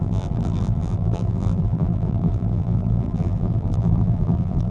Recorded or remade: remade